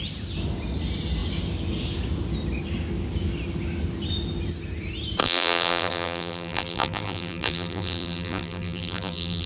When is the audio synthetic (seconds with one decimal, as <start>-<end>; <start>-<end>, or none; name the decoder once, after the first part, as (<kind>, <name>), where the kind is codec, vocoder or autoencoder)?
5.2-9.5 (vocoder, BigVGAN v2)